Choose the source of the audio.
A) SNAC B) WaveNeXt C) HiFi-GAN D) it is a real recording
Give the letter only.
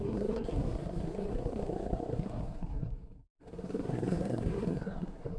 A